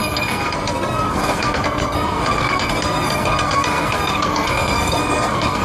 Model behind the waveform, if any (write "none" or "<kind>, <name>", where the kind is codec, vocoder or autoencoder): codec, SNAC